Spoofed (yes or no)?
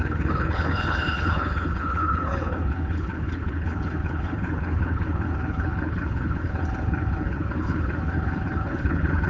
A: yes